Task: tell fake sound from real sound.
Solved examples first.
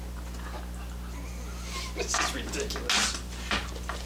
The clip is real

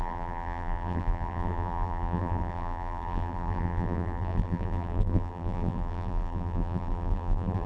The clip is fake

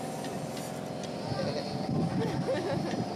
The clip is real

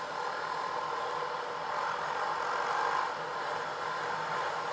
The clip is real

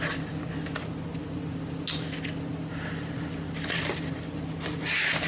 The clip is real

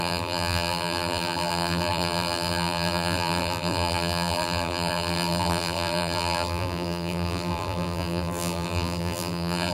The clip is fake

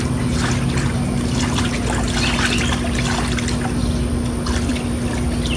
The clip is real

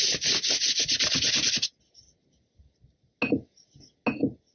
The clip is real